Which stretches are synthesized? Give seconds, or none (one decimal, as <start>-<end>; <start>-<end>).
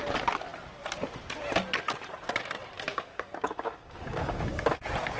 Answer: 2.9-4.6